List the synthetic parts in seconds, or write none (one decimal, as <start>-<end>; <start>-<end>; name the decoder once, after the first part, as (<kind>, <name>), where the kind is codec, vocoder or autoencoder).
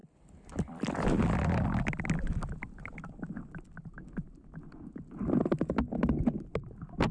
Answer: none